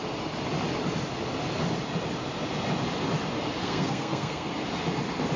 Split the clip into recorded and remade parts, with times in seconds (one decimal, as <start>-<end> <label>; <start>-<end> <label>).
0.0-3.6 recorded; 3.6-4.5 remade; 4.5-5.4 recorded